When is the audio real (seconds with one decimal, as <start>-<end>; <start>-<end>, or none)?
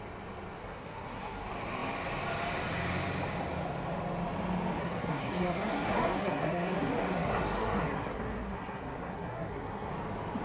0.0-0.6; 1.4-4.8; 9.9-10.4